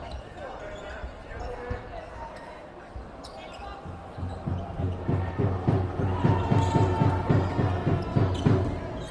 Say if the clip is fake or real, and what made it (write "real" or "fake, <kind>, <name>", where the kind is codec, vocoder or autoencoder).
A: real